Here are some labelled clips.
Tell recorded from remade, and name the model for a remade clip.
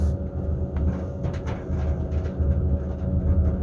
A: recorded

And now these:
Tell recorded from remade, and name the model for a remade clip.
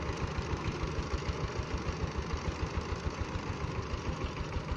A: recorded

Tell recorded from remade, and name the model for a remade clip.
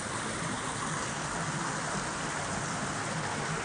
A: recorded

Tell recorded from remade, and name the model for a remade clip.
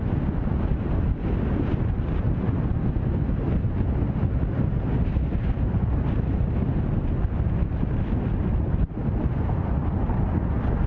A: recorded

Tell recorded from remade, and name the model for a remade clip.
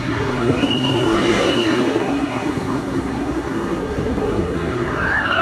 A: remade, codec, SNAC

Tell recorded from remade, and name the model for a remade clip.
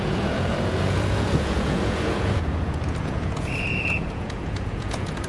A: remade, vocoder, Vocos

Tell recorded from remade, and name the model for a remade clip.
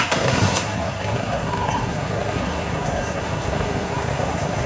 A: remade, codec, SNAC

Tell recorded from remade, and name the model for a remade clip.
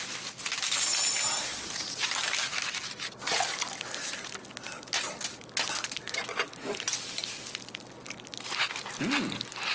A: recorded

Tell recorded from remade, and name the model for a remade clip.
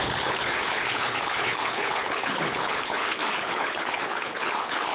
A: remade, codec, HILCodec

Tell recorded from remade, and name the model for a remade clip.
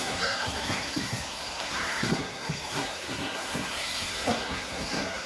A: remade, codec, SNAC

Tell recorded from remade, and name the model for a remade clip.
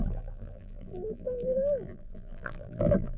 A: remade, vocoder, BigVGAN v2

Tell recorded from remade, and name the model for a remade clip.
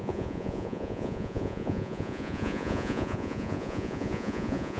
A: remade, vocoder, Vocos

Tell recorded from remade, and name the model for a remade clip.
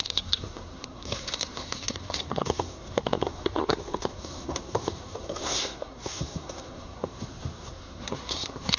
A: remade, codec, SNAC